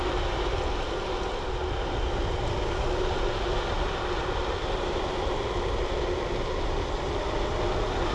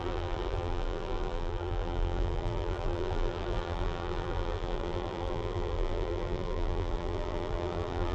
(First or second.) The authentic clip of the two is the first